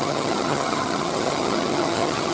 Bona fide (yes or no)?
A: no